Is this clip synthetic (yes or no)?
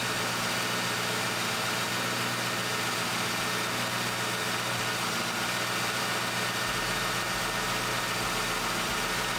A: no